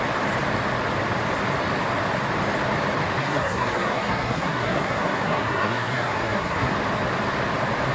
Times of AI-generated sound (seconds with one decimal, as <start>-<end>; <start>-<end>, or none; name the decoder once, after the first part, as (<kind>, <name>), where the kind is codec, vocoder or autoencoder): 3.2-6.7 (codec, SNAC)